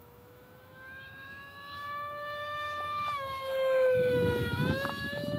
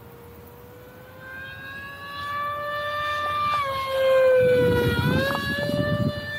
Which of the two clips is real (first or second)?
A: second